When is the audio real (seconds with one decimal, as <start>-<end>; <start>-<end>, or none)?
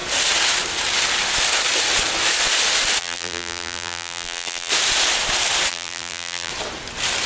0.0-3.0; 4.7-5.7; 6.5-7.3